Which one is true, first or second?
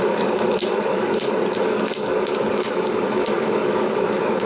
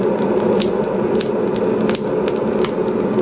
second